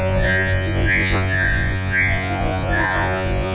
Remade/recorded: remade